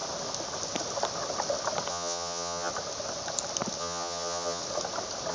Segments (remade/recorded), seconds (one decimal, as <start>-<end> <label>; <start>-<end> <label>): 0.0-1.9 recorded; 1.9-2.7 remade; 2.7-3.8 recorded; 3.8-4.6 remade; 4.6-5.3 recorded